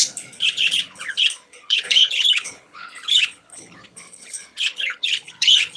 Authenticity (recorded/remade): remade